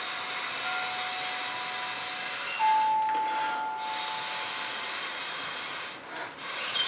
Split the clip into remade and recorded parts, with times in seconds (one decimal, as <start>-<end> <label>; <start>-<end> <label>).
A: 0.0-5.1 recorded; 5.1-6.9 remade